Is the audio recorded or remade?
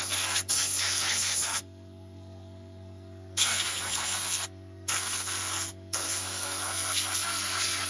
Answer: remade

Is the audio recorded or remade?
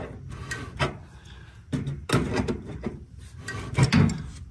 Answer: recorded